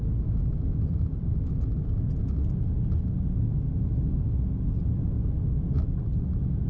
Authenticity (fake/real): real